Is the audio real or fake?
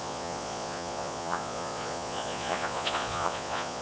fake